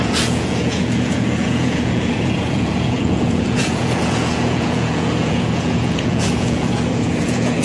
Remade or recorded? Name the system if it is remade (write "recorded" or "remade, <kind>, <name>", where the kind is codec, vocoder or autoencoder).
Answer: remade, vocoder, Vocos